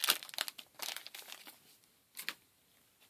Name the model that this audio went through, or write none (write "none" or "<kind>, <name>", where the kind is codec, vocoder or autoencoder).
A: none